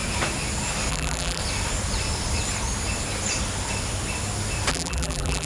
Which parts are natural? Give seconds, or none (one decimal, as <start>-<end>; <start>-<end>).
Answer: 0.0-0.9; 1.4-4.7